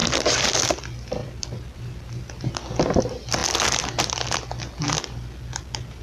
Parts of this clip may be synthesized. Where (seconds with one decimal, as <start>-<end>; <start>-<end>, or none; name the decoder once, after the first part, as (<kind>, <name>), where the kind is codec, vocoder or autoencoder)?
1.2-3.0 (vocoder, BigVGAN v2)